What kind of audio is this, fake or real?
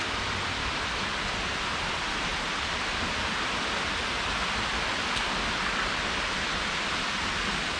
real